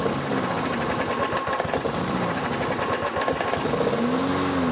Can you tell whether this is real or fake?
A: real